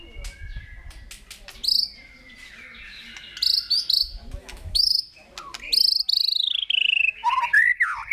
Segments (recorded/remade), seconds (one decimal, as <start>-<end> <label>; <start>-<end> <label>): 0.0-4.4 recorded; 4.4-5.0 remade; 5.0-8.1 recorded